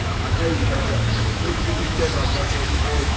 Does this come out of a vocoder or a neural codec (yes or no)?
yes